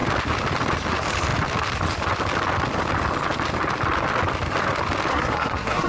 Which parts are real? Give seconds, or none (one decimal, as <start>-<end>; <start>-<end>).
0.0-5.1